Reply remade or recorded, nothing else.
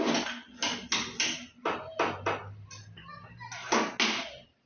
recorded